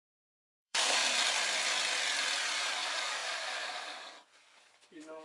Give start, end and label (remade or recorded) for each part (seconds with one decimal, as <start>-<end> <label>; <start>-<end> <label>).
0.0-1.0 remade; 1.0-2.7 recorded; 2.7-5.2 remade